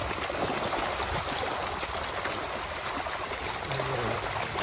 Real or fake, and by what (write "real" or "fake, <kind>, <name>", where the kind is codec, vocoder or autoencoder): real